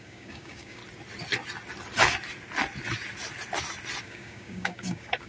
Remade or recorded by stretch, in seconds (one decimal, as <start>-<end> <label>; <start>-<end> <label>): 0.0-0.8 remade; 0.8-4.0 recorded; 4.0-5.3 remade